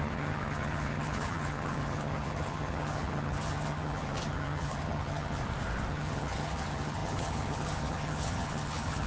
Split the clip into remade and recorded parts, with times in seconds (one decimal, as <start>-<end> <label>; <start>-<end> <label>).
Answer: 0.0-5.4 remade; 5.4-5.9 recorded; 5.9-9.1 remade